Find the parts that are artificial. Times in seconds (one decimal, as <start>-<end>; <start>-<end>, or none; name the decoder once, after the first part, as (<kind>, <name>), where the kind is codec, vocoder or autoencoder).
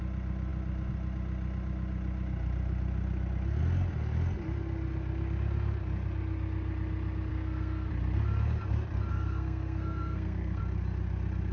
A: 7.3-7.9 (codec, SNAC); 9.1-10.6